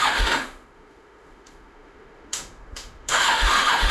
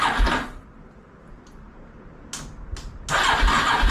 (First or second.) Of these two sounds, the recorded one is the second